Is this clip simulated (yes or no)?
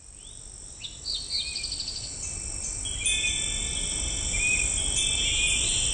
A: no